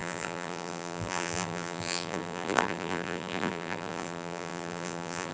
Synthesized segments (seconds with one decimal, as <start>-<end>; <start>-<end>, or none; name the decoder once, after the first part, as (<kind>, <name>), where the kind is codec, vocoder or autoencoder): 0.0-5.3 (vocoder, BigVGAN v2)